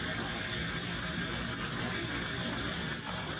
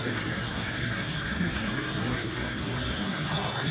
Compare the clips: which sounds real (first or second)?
first